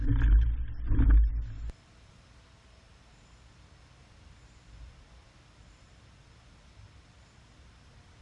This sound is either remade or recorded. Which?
recorded